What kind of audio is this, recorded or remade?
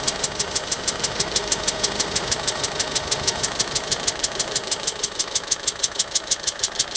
remade